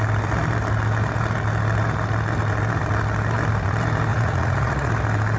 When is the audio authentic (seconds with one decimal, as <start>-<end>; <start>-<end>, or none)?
0.0-4.1; 4.9-5.4